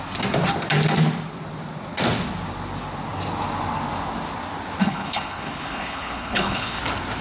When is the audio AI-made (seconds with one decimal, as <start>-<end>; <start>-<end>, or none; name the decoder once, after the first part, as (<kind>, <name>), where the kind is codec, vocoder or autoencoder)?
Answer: 4.8-6.8 (codec, HILCodec)